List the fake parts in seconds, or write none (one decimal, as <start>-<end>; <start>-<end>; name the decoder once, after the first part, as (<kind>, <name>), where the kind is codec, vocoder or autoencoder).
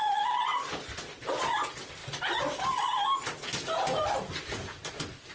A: 0.5-1.0 (vocoder, BigVGAN v2)